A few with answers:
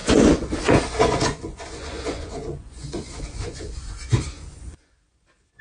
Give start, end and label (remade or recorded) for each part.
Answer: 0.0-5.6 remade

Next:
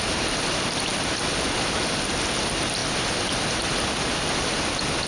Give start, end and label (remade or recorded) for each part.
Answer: 0.0-5.1 recorded

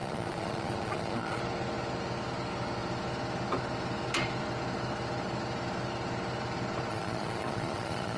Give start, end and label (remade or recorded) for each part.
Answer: 0.0-1.4 remade; 1.4-6.9 recorded; 6.9-8.2 remade